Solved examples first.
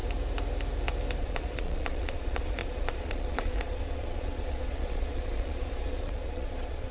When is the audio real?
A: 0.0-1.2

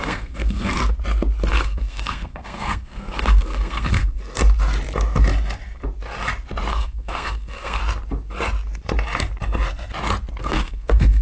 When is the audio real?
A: 0.8-1.5; 4.2-6.7; 7.8-10.4

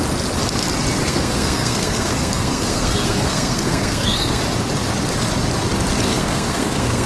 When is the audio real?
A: 0.0-1.0; 4.4-6.1